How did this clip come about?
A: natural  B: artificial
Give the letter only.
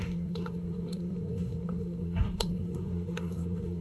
B